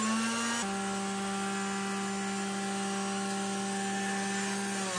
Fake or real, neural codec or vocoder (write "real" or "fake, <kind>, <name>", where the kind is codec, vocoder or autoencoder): real